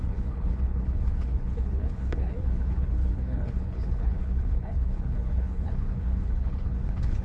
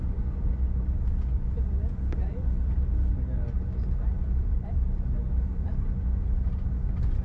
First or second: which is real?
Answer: second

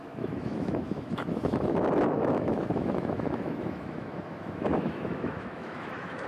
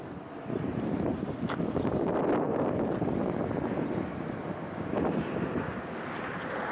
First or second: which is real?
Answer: second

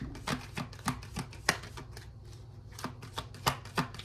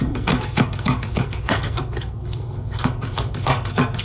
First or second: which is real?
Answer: first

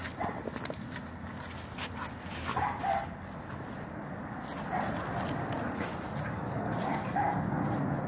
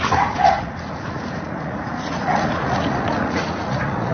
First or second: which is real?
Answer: first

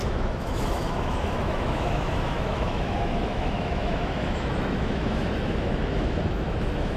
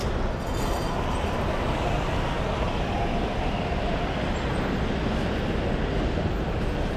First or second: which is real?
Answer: second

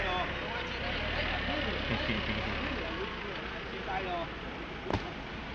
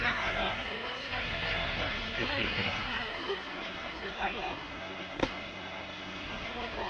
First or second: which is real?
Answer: first